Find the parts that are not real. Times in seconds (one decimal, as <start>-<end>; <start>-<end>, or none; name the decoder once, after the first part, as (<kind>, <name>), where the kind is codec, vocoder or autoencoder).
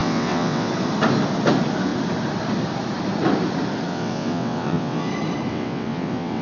0.0-0.7 (vocoder, WaveNeXt); 3.9-5.1; 5.5-6.4